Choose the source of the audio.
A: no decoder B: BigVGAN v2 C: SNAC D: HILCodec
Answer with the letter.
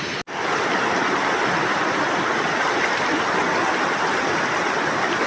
A